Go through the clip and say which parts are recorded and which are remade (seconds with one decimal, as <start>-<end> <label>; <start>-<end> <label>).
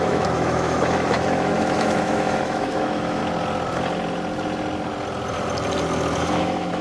0.0-3.2 remade; 3.2-6.2 recorded; 6.2-6.8 remade